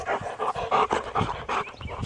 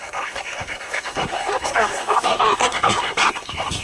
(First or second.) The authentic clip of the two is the first